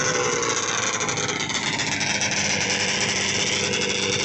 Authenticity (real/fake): real